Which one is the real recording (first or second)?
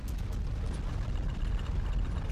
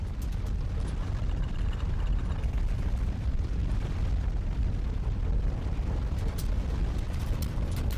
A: first